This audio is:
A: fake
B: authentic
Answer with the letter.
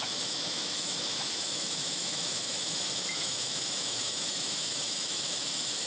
A